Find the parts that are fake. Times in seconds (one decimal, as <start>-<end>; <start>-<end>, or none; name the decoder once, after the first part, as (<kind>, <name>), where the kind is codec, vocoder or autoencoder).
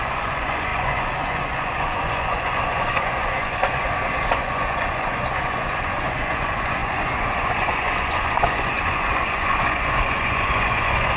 0.0-11.2 (vocoder, Vocos)